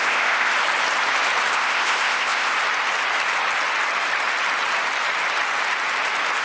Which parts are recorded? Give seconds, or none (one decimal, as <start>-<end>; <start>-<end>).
0.5-1.5; 2.5-6.4